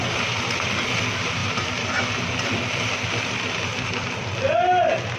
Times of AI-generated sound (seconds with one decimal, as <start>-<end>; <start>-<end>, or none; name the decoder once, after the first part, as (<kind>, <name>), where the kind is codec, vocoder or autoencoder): 1.4-4.5 (vocoder, BigVGAN v2)